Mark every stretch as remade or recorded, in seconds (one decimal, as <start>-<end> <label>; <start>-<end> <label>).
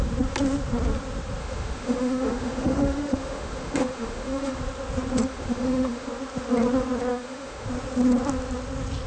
0.0-1.4 recorded; 1.4-4.6 remade; 4.6-5.3 recorded; 5.3-6.1 remade; 6.1-7.1 recorded; 7.1-7.7 remade; 7.7-9.1 recorded